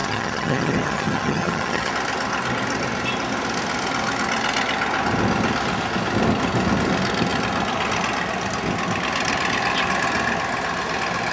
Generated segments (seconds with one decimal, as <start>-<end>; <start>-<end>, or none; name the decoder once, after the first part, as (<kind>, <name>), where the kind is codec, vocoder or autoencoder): 0.0-1.9 (vocoder, HiFi-GAN)